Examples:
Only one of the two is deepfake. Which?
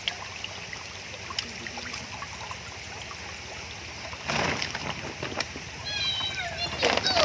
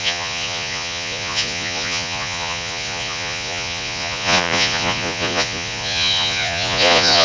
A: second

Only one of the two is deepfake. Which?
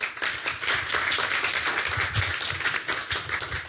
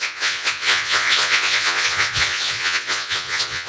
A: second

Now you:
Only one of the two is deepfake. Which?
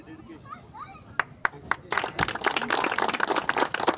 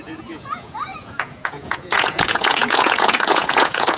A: second